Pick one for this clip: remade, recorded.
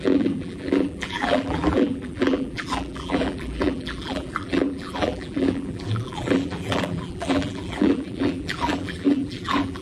remade